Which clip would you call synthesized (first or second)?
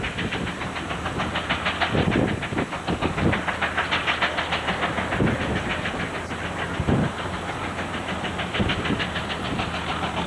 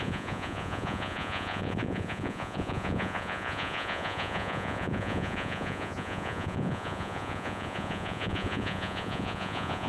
second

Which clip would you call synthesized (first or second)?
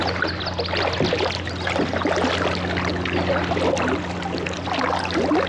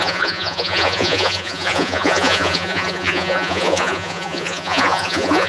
second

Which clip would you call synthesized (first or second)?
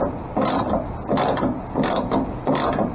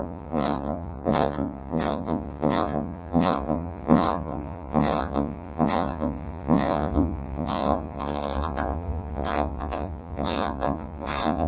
second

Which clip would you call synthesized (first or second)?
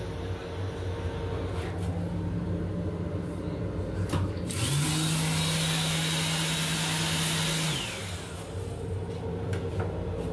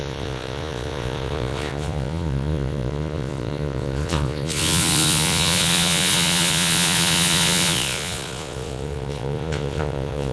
second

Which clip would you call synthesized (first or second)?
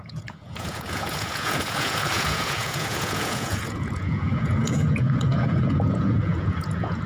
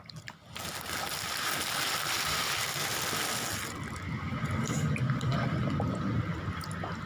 first